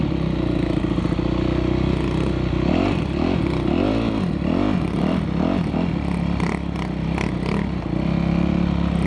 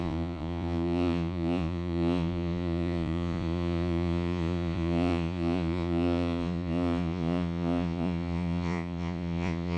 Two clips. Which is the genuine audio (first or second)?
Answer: first